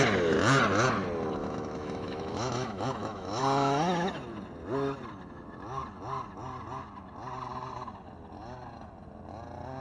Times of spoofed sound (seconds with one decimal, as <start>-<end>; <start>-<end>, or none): 1.4-3.4